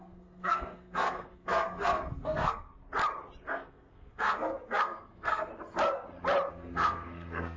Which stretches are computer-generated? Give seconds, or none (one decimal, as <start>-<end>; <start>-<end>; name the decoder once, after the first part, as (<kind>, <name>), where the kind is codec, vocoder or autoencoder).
0.0-2.7 (codec, SNAC); 3.5-5.5; 6.5-7.6